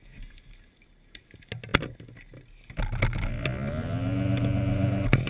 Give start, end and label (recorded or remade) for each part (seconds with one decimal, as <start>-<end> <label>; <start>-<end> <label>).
0.0-5.3 recorded